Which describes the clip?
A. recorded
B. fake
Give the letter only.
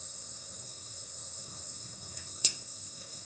B